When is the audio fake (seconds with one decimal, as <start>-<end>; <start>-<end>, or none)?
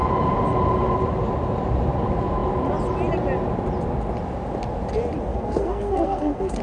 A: 5.3-6.6